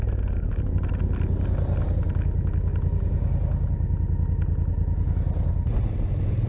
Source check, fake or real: real